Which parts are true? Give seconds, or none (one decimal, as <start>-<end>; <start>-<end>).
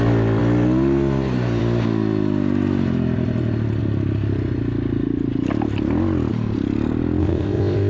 0.0-7.2